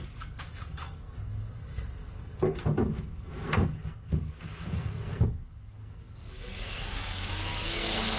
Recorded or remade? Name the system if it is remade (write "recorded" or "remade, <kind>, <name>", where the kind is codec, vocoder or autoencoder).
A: remade, codec, SNAC